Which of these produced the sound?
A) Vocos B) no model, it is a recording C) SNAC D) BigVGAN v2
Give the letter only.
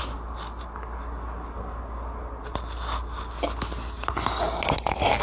B